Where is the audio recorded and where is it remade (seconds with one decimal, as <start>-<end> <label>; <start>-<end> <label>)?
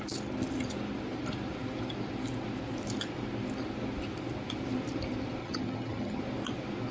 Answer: 0.0-5.4 recorded; 5.4-6.2 remade; 6.2-6.9 recorded